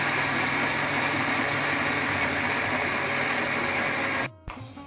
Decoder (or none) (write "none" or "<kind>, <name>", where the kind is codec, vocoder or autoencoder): none